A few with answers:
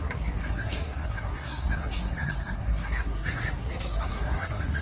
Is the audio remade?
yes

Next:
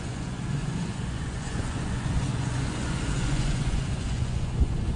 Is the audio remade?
yes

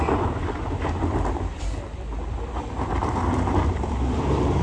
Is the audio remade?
yes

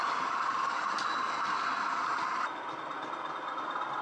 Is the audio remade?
no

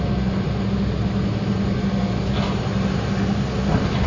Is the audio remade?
no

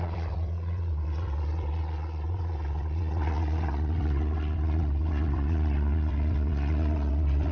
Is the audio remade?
yes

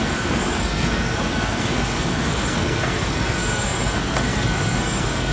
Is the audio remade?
yes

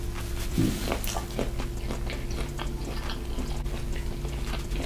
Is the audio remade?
no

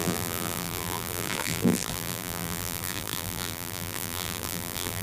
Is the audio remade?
yes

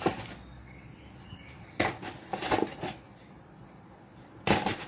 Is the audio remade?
no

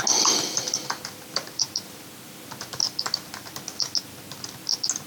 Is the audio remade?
no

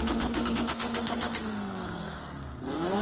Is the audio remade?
yes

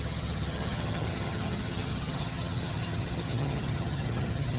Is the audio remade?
yes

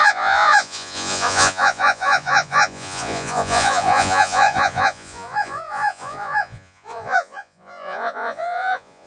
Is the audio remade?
yes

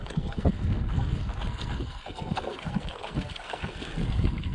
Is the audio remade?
yes